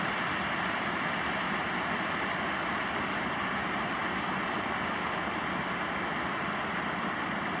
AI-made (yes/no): no